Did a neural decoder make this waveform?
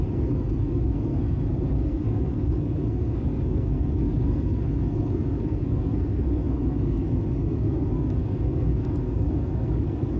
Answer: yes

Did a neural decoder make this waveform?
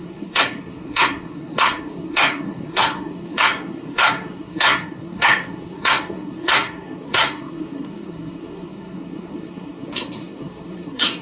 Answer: yes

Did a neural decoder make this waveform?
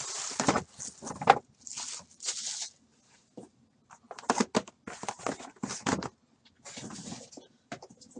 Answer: no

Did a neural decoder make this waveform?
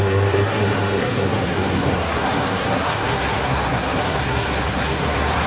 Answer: yes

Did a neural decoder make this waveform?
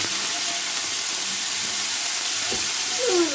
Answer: no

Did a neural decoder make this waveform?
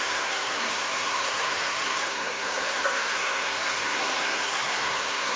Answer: yes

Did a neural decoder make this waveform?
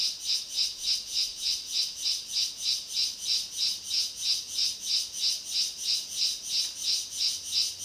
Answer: no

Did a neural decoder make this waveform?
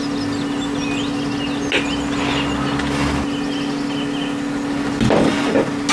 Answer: no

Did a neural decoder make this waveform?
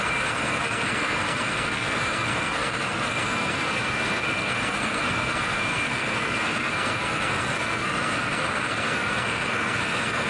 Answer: yes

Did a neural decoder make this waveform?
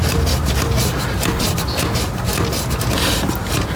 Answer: no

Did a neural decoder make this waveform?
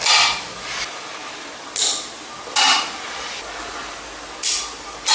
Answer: no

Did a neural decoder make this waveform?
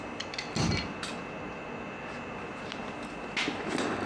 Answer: no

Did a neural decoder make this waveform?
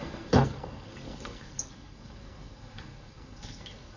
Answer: yes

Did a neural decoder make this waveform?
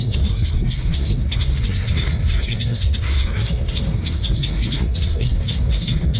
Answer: yes